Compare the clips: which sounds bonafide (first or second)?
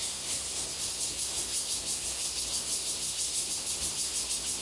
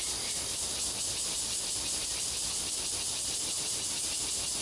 second